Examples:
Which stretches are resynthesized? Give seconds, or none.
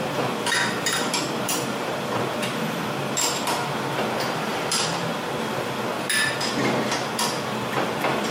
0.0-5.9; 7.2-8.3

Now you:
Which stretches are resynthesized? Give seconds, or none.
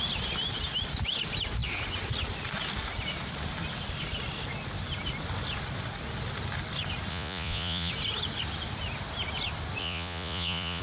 7.1-7.9; 9.8-10.8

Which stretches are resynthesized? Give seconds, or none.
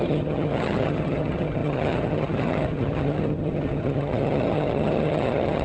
0.0-5.6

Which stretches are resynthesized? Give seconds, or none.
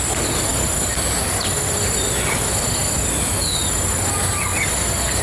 none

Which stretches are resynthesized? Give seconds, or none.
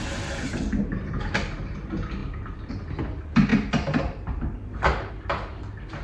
none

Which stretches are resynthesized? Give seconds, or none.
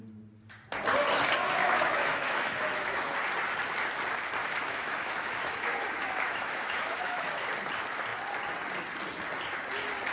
1.6-3.0; 4.4-7.5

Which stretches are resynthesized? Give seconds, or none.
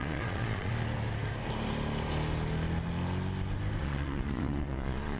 0.0-0.7; 3.8-5.2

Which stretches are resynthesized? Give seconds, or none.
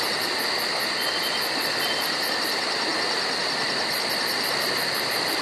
none